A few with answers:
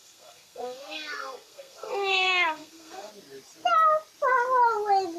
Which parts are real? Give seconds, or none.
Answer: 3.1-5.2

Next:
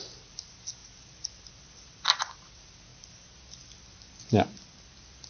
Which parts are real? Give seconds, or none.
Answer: 0.0-5.3

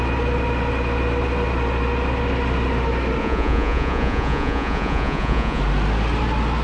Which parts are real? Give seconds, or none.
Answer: 0.0-3.2; 5.6-6.6

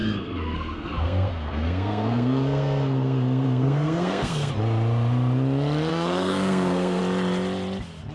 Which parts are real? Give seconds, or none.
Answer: 4.5-5.9; 7.0-8.1

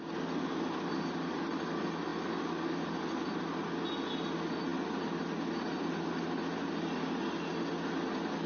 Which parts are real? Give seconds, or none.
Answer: 0.0-8.5